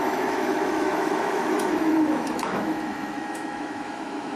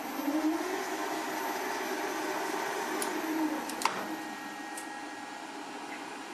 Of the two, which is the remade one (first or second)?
first